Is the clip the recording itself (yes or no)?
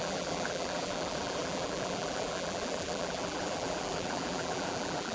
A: no